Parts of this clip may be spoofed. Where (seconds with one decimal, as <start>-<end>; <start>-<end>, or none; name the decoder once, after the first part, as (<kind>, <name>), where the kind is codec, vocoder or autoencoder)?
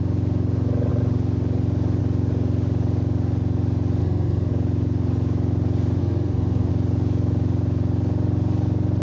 4.0-4.5 (codec, SNAC); 6.0-6.7